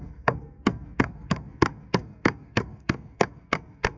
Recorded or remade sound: remade